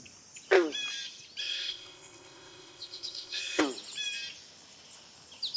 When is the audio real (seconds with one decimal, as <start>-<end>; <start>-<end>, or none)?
0.0-1.4; 3.6-5.6